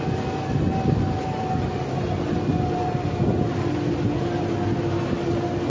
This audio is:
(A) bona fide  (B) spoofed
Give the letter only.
A